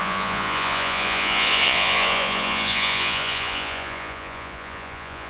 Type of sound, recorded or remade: remade